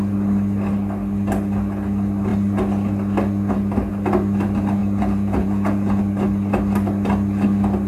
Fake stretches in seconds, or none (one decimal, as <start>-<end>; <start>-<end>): 4.8-6.0